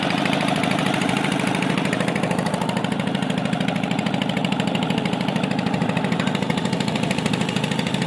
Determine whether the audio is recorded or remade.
remade